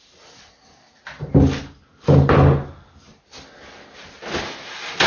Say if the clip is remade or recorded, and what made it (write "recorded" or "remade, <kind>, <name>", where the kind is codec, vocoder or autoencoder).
recorded